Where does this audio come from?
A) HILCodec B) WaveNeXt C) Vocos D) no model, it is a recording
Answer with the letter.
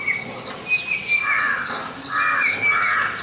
D